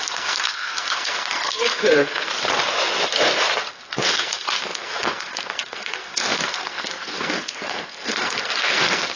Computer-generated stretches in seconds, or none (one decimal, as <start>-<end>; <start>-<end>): 0.0-2.3; 3.7-9.2